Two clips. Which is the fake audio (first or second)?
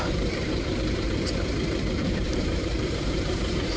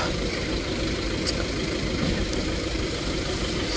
first